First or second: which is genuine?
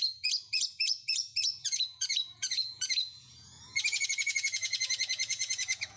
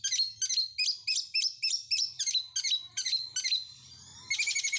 second